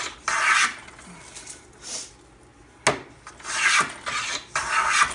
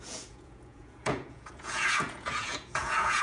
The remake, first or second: second